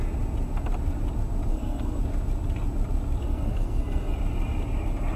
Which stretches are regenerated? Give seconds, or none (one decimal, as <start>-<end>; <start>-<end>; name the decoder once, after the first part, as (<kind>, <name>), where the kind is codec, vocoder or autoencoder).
1.5-2.0 (codec, SNAC); 3.2-4.2